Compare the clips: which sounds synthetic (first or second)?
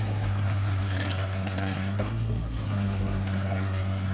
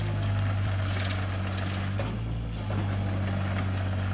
first